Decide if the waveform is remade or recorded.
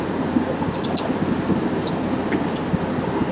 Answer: recorded